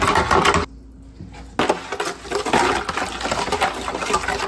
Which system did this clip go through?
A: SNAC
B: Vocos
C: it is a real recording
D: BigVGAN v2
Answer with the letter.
C